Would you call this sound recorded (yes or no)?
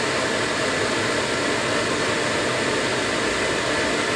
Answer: yes